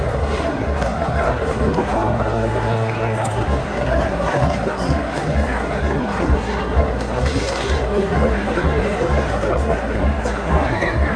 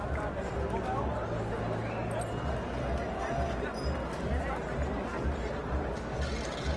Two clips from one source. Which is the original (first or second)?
second